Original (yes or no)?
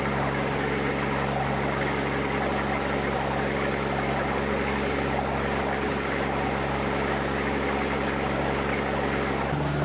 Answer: yes